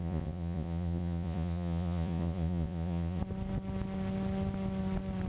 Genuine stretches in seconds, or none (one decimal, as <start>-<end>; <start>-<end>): 3.2-5.3